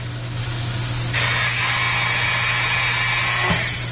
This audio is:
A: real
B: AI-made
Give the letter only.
A